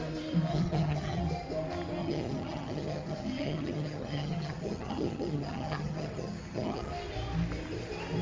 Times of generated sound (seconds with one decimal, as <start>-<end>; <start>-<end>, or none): 0.5-1.2; 2.0-6.9